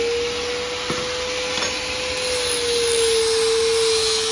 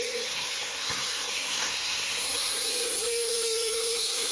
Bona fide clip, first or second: first